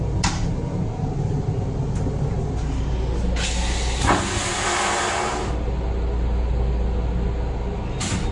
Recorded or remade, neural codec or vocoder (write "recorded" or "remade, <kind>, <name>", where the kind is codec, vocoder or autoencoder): recorded